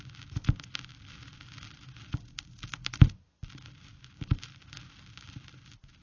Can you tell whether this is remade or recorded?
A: recorded